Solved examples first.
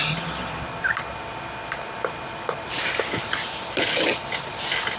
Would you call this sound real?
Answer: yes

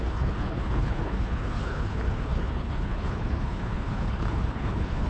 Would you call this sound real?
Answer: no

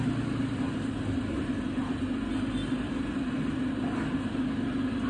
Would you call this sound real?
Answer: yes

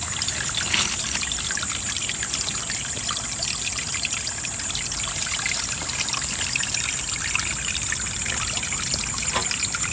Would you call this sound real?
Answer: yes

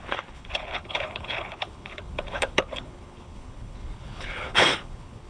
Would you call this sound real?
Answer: no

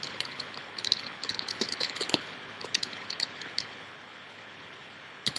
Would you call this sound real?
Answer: no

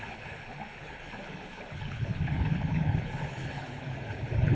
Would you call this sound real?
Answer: no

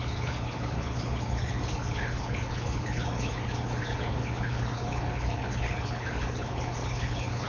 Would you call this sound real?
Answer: no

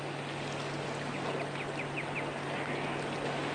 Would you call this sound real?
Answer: yes